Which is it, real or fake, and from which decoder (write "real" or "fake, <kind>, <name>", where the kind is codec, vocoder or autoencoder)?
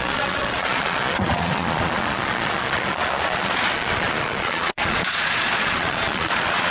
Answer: fake, vocoder, Vocos